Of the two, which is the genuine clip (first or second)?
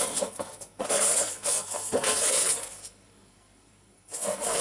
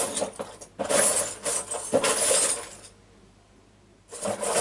second